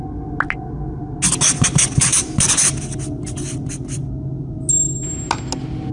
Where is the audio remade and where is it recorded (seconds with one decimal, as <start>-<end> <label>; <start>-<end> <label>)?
0.0-5.9 recorded